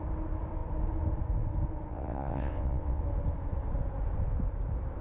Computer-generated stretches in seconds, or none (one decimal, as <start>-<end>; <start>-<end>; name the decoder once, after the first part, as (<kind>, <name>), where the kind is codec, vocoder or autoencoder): 1.9-3.0 (vocoder, WaveNeXt)